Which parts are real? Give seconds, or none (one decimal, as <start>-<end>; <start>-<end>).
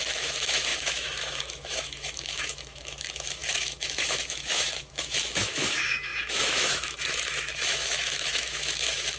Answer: none